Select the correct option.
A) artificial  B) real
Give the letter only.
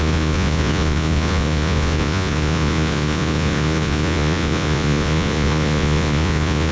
A